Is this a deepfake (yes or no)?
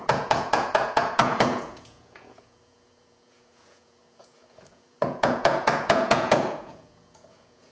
yes